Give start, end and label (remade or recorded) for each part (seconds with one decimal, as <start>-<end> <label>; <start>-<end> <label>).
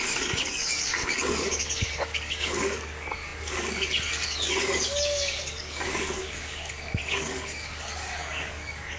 0.0-9.0 remade